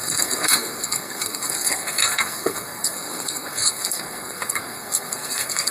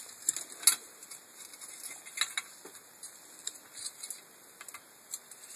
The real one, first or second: second